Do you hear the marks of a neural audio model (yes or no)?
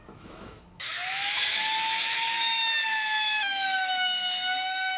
yes